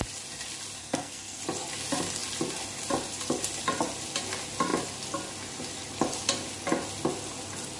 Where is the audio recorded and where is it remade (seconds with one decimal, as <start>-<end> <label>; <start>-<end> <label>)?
0.0-0.8 recorded; 0.8-1.4 remade; 1.4-7.8 recorded